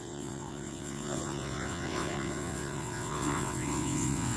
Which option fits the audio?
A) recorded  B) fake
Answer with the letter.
B